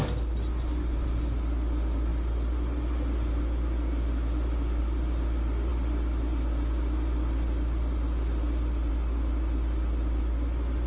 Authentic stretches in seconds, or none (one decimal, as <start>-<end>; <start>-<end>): 0.0-10.9